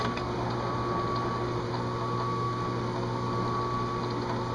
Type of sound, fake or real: real